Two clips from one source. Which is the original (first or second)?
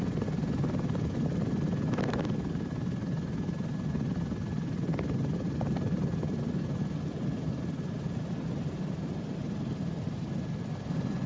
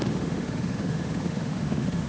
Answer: first